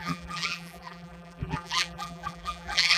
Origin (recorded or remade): remade